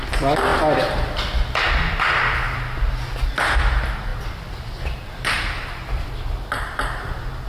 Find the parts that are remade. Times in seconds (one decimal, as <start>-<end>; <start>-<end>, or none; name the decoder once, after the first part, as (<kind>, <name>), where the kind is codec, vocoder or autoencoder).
4.1-6.1 (vocoder, BigVGAN v2)